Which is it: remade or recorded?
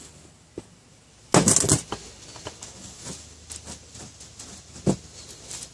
recorded